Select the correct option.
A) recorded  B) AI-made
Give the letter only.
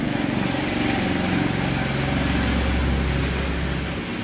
A